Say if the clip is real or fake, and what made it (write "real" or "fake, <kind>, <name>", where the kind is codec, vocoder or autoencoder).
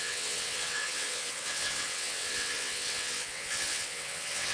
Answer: fake, vocoder, WaveNeXt